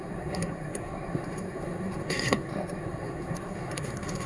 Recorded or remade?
remade